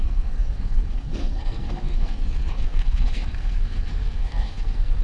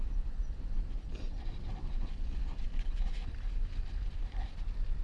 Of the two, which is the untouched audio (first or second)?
second